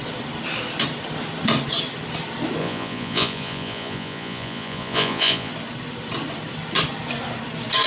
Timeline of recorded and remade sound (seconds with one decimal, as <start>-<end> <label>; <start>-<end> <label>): 0.0-2.6 recorded; 2.6-5.5 remade; 5.5-7.9 recorded

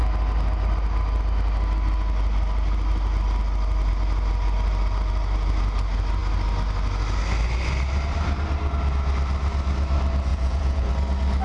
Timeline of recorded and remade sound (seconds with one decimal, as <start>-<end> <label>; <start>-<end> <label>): 0.0-10.3 recorded; 10.3-10.9 remade; 10.9-11.4 recorded